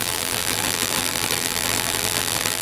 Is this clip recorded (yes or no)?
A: no